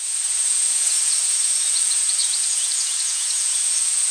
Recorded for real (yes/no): no